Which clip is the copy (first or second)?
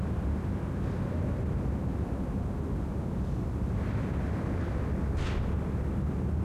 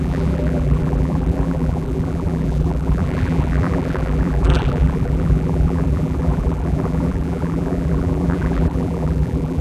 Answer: second